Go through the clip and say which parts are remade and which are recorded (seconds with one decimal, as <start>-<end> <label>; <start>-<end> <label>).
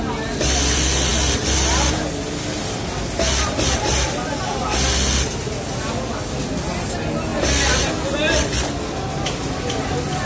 0.0-10.3 recorded